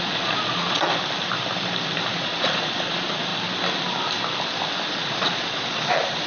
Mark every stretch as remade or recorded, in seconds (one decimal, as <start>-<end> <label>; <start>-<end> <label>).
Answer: 0.0-0.9 remade; 0.9-2.1 recorded; 2.1-3.3 remade; 3.3-4.9 recorded; 4.9-6.3 remade